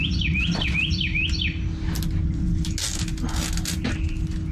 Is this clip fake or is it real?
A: real